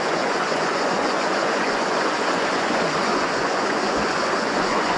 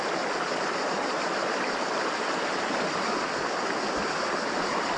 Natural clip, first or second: second